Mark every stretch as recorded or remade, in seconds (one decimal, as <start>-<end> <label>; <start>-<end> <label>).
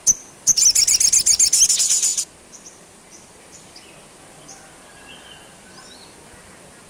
0.0-2.1 recorded; 2.1-3.4 remade; 3.4-6.9 recorded